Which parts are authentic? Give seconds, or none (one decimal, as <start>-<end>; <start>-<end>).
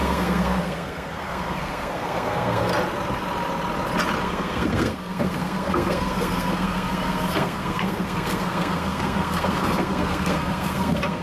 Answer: 2.7-4.2